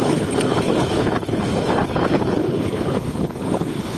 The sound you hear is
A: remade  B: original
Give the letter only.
A